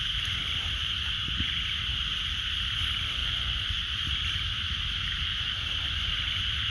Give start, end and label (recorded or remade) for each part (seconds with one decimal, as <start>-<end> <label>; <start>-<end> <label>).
0.0-0.8 recorded; 0.8-1.6 remade; 1.6-3.2 recorded; 3.2-3.7 remade; 3.7-6.7 recorded